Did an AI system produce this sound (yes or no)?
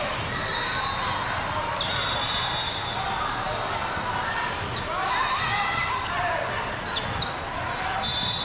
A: no